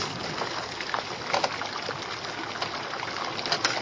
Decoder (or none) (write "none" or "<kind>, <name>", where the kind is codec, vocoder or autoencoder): none